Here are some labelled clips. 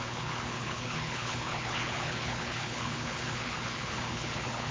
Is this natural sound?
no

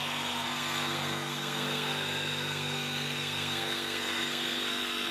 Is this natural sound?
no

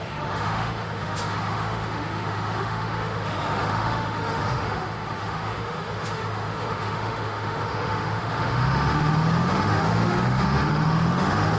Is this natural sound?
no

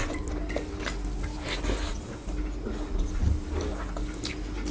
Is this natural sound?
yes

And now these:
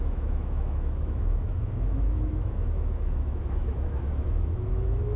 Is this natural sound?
no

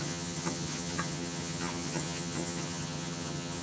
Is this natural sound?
no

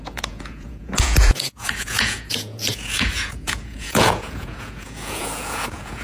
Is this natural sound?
no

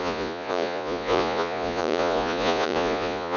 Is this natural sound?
no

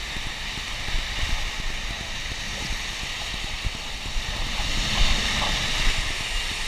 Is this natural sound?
yes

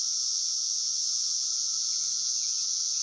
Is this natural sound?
no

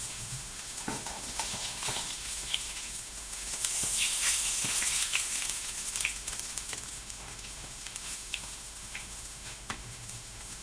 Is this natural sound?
no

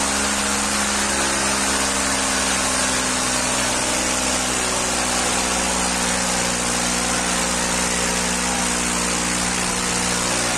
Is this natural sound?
yes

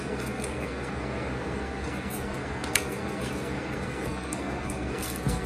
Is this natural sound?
no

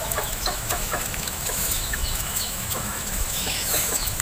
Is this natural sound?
no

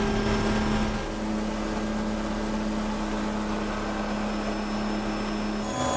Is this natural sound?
yes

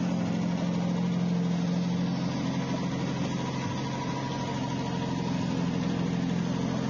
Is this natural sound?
yes